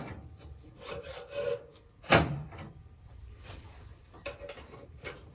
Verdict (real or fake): fake